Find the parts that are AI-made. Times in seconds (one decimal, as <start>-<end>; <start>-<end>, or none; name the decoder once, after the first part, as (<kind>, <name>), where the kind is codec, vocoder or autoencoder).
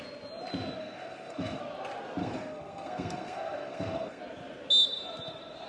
0.8-1.6 (codec, SNAC); 2.2-4.2